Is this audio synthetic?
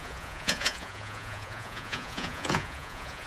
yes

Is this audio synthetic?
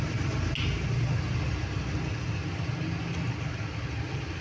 no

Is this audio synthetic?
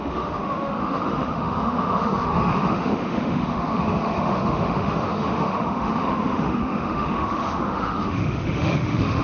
yes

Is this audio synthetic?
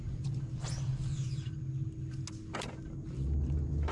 no